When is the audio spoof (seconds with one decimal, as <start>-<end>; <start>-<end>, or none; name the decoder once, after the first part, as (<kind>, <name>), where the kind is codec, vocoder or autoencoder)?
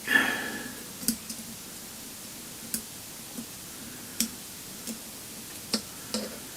4.1-5.9 (vocoder, BigVGAN v2)